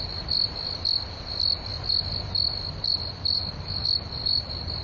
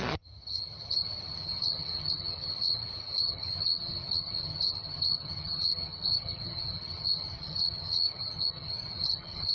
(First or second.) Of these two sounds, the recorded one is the first